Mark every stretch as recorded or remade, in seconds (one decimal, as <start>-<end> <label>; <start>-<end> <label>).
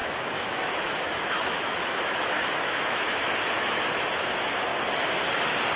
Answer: 0.0-4.7 remade; 4.7-5.8 recorded